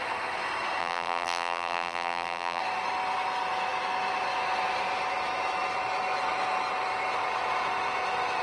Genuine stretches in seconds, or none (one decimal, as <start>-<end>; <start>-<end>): 0.0-0.8; 2.6-8.4